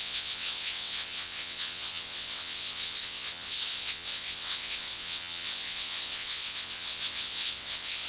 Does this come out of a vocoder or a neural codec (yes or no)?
yes